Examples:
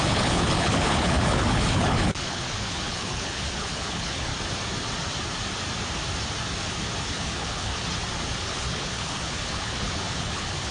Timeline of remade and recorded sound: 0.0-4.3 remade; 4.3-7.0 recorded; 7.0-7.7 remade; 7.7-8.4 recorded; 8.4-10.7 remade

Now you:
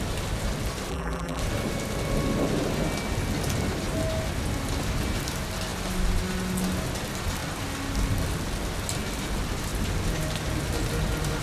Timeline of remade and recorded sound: 0.0-0.9 recorded; 0.9-1.4 remade; 1.4-11.4 recorded

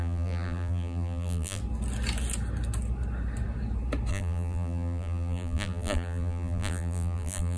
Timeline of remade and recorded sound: 0.0-1.6 remade; 1.6-4.1 recorded; 4.1-7.6 remade

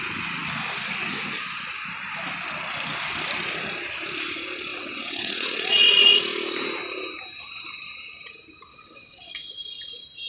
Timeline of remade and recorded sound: 0.0-4.7 recorded; 4.7-5.9 remade; 5.9-8.7 recorded; 8.7-9.5 remade; 9.5-10.3 recorded

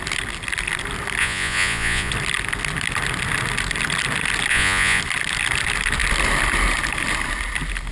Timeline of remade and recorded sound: 0.0-1.2 recorded; 1.2-2.1 remade; 2.1-4.5 recorded; 4.5-5.0 remade; 5.0-7.9 recorded

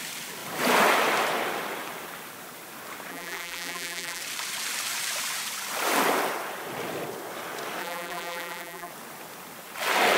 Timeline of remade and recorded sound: 0.0-3.1 recorded; 3.1-4.2 remade; 4.2-7.8 recorded; 7.8-8.9 remade; 8.9-10.2 recorded

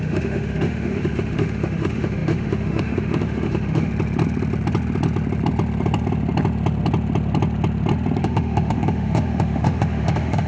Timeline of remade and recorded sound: 0.0-3.9 remade; 3.9-8.2 recorded; 8.2-10.5 remade

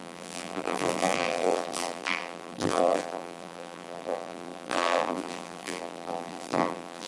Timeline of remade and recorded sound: 0.0-7.1 remade